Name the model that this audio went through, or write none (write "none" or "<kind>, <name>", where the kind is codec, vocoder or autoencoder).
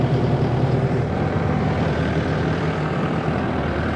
vocoder, BigVGAN v2